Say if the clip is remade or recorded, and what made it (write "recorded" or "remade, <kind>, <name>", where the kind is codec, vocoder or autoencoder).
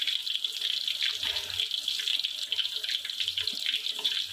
recorded